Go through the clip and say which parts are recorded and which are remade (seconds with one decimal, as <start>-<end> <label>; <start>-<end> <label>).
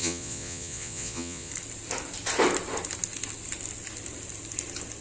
0.0-1.5 remade; 1.5-5.0 recorded